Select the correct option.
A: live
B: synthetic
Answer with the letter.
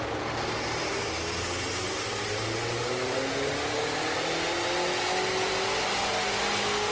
A